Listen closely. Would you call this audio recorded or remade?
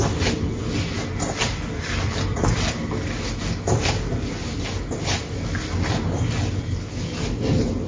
recorded